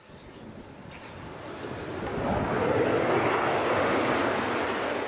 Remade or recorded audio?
recorded